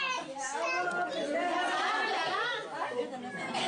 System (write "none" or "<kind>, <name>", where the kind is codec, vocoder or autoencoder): none